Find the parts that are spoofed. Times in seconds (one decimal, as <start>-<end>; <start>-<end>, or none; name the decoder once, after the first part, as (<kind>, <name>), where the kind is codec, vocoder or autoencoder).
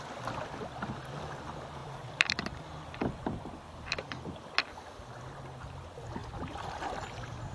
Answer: 1.8-2.6 (vocoder, BigVGAN v2); 3.0-4.1; 6.2-6.9